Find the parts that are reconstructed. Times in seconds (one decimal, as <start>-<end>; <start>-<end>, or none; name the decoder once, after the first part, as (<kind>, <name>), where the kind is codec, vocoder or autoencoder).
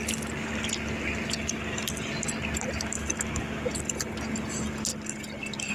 none